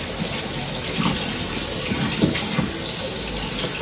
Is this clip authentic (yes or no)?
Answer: yes